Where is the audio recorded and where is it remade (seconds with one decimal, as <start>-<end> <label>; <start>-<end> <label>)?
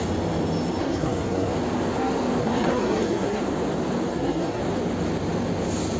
0.0-0.8 recorded; 0.8-1.5 remade; 1.5-2.4 recorded; 2.4-3.4 remade; 3.4-4.1 recorded; 4.1-4.6 remade; 4.6-6.0 recorded